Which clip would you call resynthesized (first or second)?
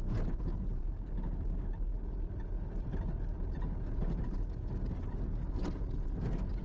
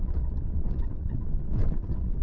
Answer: second